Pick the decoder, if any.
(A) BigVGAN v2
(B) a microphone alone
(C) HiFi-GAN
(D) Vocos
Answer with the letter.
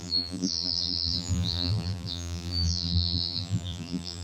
A